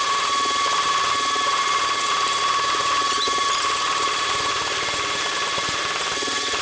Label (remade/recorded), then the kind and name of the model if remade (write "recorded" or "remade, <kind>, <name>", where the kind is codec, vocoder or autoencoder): remade, vocoder, BigVGAN v2